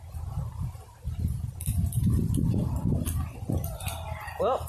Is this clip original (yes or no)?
yes